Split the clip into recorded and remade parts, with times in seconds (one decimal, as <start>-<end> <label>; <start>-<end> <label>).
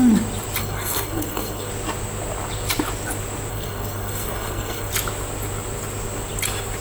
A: 0.0-0.6 recorded; 0.6-1.7 remade; 1.7-3.5 recorded; 3.5-4.9 remade; 4.9-6.8 recorded